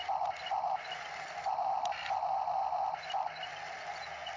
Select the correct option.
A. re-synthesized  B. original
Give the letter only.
B